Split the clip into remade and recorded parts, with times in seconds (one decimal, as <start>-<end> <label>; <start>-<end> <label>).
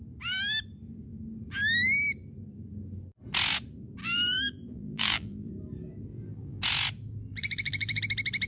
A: 0.0-4.0 recorded; 4.0-5.5 remade; 5.5-6.1 recorded; 6.1-6.6 remade; 6.6-7.3 recorded; 7.3-8.0 remade; 8.0-8.5 recorded